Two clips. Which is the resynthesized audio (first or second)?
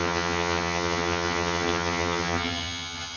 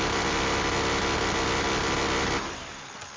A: first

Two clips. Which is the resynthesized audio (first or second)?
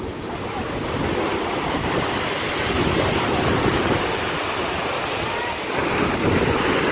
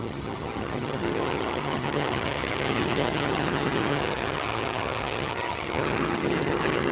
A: second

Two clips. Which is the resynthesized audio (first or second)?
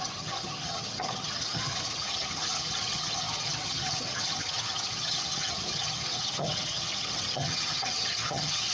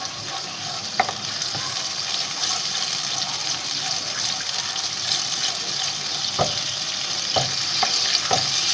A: first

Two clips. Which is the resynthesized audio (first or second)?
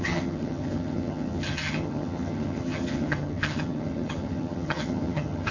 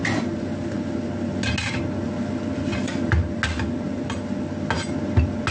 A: first